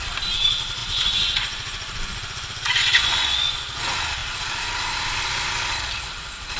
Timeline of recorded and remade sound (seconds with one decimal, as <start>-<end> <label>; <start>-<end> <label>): 0.0-0.8 recorded; 0.8-3.8 remade; 3.8-6.6 recorded